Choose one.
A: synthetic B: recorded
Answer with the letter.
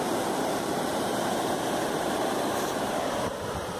A